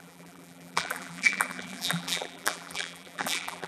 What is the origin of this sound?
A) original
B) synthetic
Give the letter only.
B